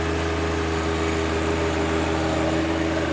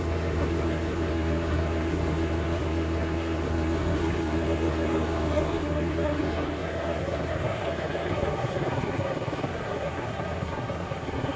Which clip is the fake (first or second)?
second